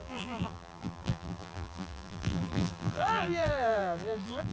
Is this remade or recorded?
remade